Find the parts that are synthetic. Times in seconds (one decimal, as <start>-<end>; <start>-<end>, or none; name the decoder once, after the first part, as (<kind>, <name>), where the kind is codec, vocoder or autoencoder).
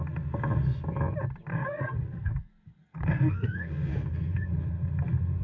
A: 1.5-3.9 (codec, SNAC)